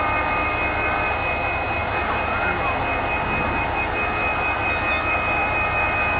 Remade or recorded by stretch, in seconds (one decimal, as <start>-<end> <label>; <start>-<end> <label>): 0.0-6.2 recorded